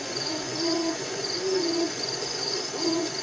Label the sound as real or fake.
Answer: fake